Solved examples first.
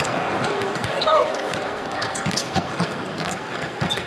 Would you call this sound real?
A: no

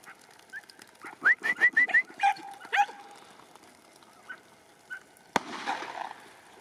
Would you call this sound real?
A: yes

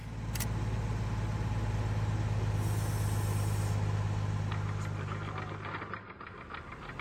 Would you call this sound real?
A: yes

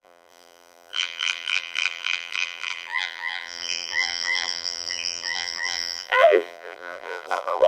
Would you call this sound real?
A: no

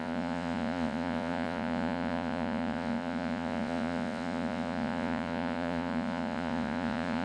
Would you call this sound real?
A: no